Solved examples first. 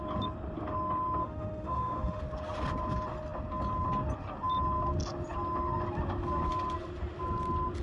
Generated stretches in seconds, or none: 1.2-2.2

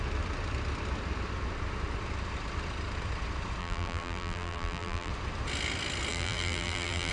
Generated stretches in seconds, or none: 3.6-5.1; 6.1-7.1

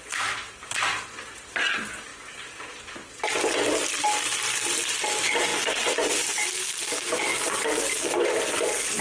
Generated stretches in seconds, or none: none

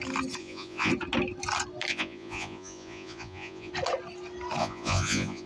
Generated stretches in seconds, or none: 0.4-0.9; 1.9-3.7; 4.6-5.5

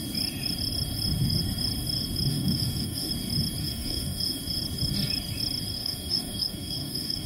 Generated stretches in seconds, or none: 2.3-3.1; 3.6-4.4; 5.7-7.3

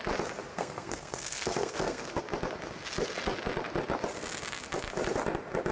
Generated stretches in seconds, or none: 0.5-2.2

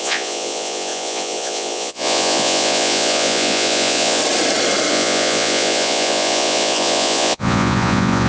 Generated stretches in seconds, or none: 0.0-4.2; 4.9-8.3